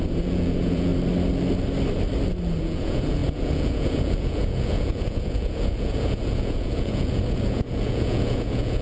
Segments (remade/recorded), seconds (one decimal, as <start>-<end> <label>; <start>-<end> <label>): 0.0-0.9 remade; 0.9-2.6 recorded; 2.6-8.8 remade

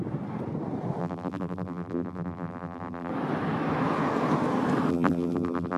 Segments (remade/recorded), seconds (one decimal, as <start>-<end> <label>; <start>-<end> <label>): 0.0-1.0 recorded; 1.0-3.1 remade; 3.1-4.9 recorded; 4.9-5.8 remade